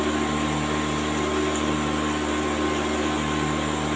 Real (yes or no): yes